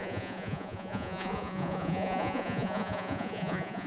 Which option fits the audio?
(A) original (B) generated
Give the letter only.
B